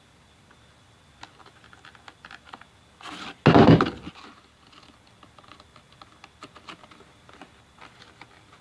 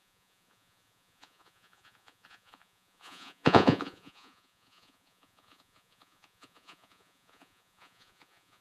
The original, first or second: first